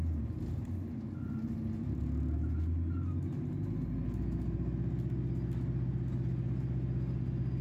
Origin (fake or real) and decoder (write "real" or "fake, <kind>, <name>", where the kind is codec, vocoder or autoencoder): real